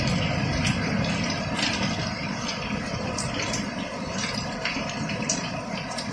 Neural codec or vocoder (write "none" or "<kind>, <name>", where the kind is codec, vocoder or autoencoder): vocoder, BigVGAN v2